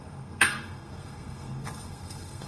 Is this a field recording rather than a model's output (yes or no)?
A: no